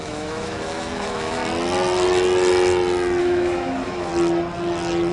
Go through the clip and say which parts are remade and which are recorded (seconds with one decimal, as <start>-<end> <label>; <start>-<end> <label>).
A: 0.0-1.4 remade; 1.4-3.2 recorded; 3.2-4.1 remade; 4.1-5.1 recorded